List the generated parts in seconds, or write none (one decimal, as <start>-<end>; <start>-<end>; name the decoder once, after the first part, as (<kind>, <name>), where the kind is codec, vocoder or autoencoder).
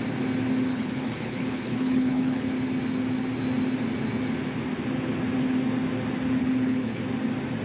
0.7-2.5 (codec, HILCodec); 6.4-7.0